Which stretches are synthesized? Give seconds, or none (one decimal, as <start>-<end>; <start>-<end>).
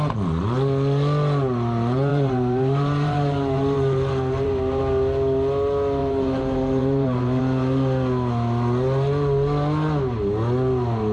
2.1-4.8; 6.0-7.4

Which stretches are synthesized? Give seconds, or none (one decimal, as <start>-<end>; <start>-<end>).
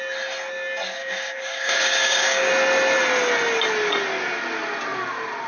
1.0-2.5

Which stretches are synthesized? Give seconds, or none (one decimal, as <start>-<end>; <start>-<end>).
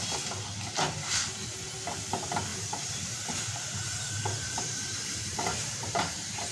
2.5-6.5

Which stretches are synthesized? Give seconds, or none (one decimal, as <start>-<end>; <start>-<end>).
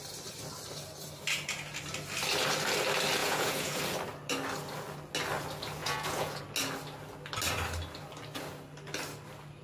3.2-3.8; 5.8-6.4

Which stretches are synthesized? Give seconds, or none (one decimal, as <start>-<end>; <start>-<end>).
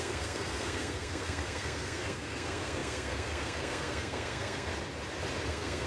0.0-4.7; 5.5-5.9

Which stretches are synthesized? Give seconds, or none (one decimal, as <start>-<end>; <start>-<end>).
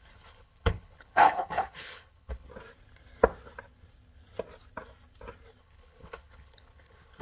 0.0-2.5; 5.6-7.2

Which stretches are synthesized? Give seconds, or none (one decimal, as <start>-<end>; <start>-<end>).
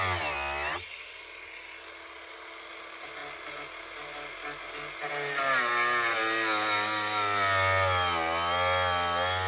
none